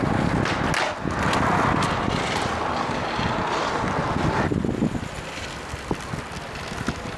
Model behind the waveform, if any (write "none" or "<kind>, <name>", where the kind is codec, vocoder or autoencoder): none